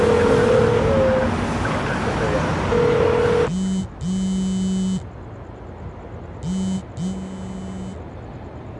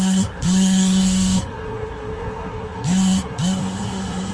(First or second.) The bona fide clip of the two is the first